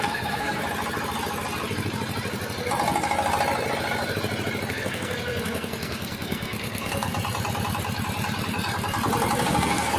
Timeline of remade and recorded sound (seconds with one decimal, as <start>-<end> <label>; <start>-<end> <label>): 0.0-0.6 remade; 0.6-4.7 recorded; 4.7-7.1 remade; 7.1-9.4 recorded; 9.4-10.0 remade